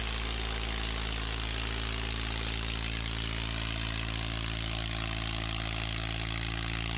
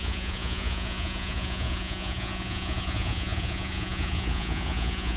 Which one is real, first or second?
first